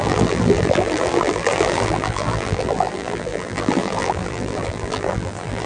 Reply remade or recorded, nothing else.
remade